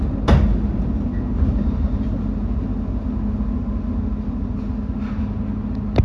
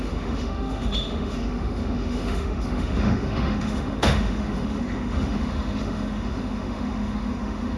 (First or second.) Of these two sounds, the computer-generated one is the second